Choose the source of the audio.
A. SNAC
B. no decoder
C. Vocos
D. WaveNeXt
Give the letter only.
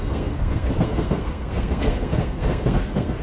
A